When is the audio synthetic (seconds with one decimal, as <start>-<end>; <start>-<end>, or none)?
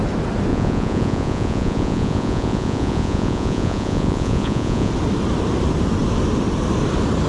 0.5-4.9